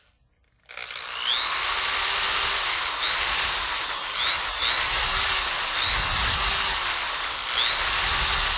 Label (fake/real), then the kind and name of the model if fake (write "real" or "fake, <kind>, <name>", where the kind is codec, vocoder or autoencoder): real